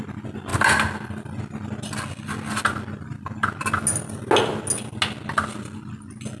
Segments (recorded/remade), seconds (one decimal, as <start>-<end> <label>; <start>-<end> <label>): 0.0-6.4 recorded